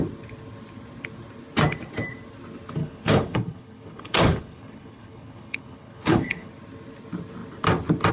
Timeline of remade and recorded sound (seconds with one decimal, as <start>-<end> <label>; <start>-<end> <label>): 0.0-2.8 recorded; 2.8-6.5 remade; 6.5-8.1 recorded